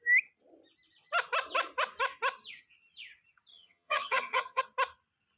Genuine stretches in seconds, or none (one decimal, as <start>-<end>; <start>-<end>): 0.0-3.5; 4.6-5.4